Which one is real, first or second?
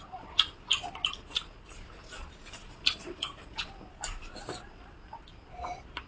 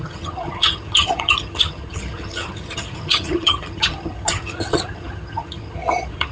first